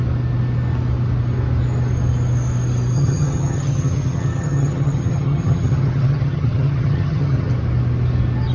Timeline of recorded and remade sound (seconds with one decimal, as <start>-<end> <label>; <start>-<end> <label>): 0.0-2.9 recorded; 2.9-7.5 remade; 7.5-8.5 recorded